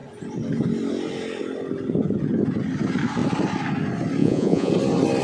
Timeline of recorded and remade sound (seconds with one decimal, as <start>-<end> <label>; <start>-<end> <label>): 0.0-4.2 recorded; 4.2-4.7 remade; 4.7-5.2 recorded